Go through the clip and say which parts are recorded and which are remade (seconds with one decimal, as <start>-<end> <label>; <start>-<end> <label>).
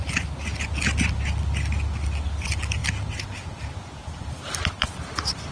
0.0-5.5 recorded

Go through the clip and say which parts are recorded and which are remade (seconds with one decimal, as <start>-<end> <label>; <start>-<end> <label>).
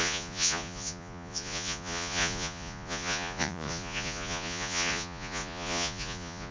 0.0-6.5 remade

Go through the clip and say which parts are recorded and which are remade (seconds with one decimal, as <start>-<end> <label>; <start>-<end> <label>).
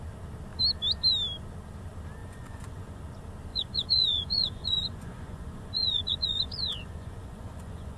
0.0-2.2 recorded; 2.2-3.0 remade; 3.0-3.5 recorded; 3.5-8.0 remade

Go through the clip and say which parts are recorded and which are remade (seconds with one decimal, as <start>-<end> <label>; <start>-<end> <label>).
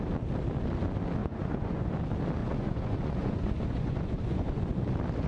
0.0-1.2 recorded; 1.2-1.9 remade; 1.9-2.4 recorded; 2.4-4.6 remade; 4.6-5.3 recorded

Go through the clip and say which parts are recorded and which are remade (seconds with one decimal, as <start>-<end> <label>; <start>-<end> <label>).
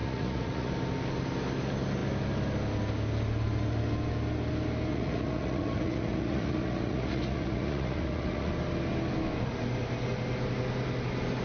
0.0-0.7 remade; 0.7-4.9 recorded; 4.9-8.5 remade; 8.5-11.4 recorded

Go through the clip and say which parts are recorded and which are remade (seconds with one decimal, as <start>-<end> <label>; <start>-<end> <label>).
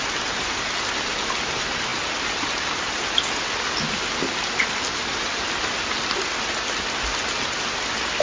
0.0-8.2 recorded